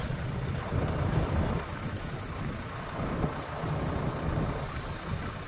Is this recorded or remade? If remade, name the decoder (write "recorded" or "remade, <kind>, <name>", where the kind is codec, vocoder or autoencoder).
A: recorded